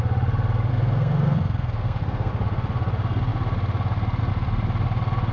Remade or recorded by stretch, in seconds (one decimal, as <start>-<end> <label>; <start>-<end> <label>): 0.0-0.7 recorded; 0.7-2.3 remade; 2.3-5.3 recorded